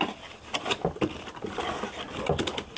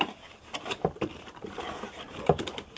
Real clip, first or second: first